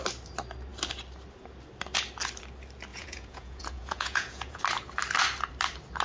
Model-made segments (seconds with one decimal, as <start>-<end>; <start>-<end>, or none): 2.9-4.6